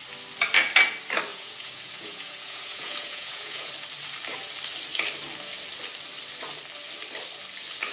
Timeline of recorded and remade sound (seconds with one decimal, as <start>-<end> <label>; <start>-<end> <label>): 0.0-1.3 recorded; 1.3-3.7 remade; 3.7-7.9 recorded